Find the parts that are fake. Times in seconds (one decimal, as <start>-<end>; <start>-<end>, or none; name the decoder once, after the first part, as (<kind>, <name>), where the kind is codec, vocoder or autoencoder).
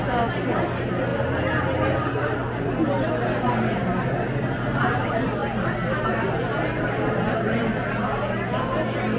none